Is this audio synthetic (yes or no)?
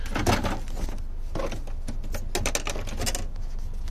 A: no